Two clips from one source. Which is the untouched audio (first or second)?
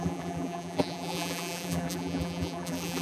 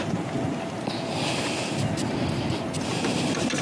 second